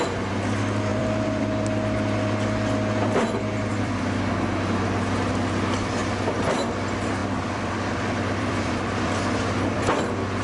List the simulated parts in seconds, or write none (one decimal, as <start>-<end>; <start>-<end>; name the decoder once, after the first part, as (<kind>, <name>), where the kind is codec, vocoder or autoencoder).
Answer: 0.9-1.4 (vocoder, BigVGAN v2); 3.7-4.2; 6.0-6.7; 7.2-10.0